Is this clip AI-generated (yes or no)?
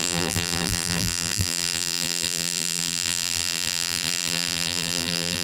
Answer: yes